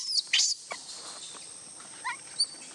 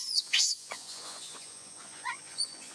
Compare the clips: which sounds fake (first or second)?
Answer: second